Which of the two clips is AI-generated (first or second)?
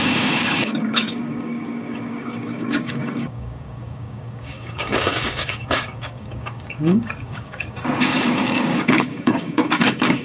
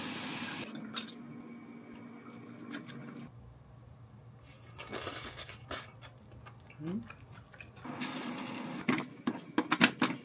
first